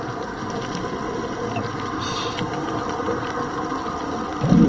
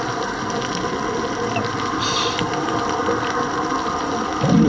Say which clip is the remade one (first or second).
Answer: first